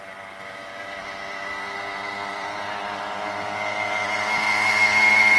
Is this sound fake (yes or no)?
no